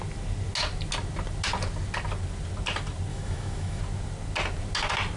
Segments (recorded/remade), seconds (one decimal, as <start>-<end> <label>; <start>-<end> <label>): 0.0-3.1 recorded; 3.1-3.8 remade; 3.8-5.2 recorded